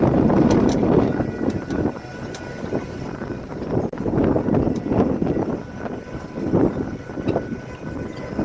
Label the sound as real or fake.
real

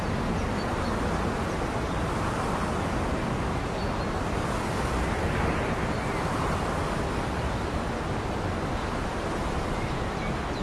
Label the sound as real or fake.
real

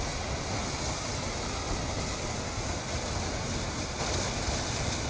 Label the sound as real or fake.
real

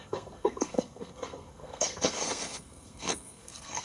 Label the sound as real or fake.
fake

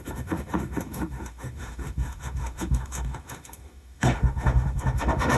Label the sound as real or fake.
fake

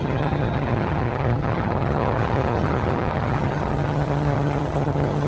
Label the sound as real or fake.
fake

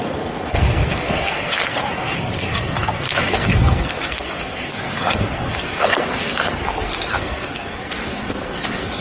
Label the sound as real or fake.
fake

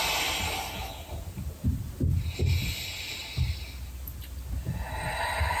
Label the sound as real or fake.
real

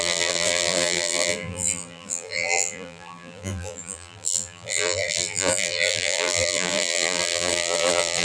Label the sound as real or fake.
fake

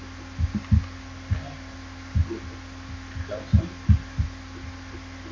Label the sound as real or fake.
real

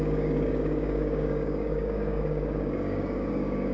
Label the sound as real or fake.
fake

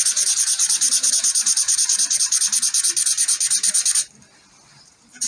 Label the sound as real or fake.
real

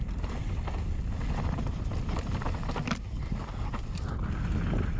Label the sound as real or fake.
real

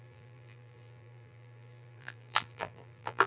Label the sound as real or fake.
fake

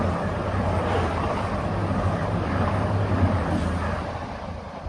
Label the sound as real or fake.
real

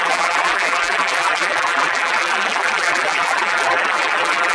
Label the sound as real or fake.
fake